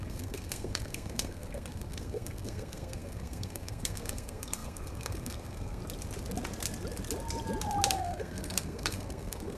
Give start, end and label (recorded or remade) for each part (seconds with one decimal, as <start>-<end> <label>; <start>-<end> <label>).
0.0-5.8 remade; 5.8-7.9 recorded; 7.9-9.6 remade